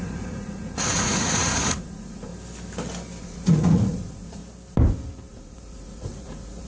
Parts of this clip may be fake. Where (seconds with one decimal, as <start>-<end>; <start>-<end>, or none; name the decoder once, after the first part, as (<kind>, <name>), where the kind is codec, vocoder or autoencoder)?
0.0-2.3 (vocoder, Vocos); 3.2-4.4; 5.3-6.7